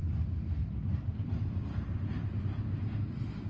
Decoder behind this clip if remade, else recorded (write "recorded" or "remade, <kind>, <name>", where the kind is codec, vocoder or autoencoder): recorded